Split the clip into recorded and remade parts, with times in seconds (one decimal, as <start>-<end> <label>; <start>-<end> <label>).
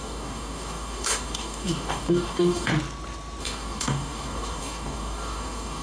0.0-2.7 remade; 2.7-3.4 recorded; 3.4-5.8 remade